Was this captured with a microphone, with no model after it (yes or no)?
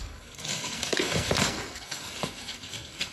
no